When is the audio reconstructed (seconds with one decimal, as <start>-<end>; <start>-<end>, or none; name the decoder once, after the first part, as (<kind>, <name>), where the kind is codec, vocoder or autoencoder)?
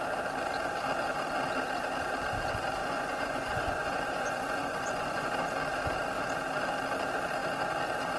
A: 2.8-5.3 (vocoder, Vocos)